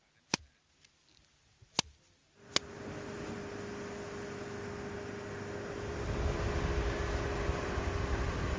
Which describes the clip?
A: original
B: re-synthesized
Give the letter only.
A